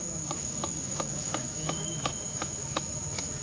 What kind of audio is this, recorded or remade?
remade